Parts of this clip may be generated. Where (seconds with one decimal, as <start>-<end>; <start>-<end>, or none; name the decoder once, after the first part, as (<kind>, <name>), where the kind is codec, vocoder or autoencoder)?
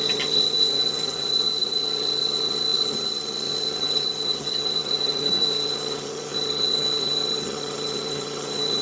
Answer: 0.0-8.8 (vocoder, HiFi-GAN)